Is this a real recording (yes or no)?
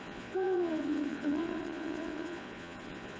no